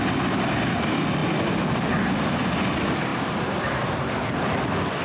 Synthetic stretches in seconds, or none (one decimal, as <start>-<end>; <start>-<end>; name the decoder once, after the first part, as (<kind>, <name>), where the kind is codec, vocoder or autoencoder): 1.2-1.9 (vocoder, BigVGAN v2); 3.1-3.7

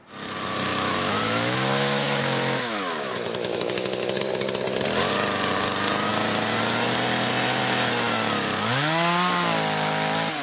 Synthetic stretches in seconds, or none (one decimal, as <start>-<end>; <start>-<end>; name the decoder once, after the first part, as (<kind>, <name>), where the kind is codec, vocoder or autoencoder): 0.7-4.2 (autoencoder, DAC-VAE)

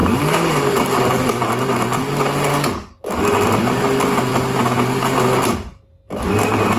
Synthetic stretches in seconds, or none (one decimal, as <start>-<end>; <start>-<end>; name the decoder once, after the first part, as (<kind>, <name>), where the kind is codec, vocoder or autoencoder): 2.5-3.2 (codec, DAC)

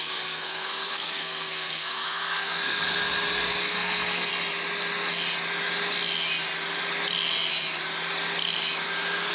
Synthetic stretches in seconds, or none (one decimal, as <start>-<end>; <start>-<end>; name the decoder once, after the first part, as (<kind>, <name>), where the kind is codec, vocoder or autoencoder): 0.0-2.8 (codec, SNAC); 3.6-4.3

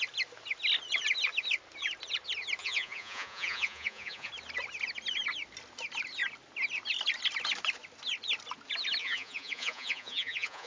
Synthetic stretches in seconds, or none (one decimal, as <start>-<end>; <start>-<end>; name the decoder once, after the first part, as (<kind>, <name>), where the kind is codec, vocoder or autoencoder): 2.6-4.3 (vocoder, Vocos); 9.0-10.7

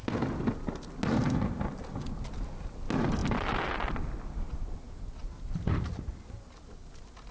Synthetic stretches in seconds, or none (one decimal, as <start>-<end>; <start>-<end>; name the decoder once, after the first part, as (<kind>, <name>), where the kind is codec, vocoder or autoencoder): none